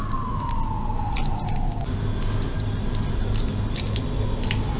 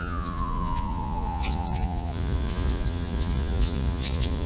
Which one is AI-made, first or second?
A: second